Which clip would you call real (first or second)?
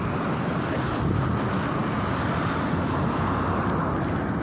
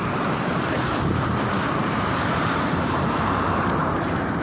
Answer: first